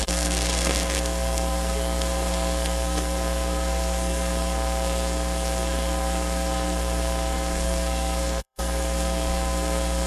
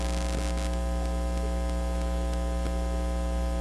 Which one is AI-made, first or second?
first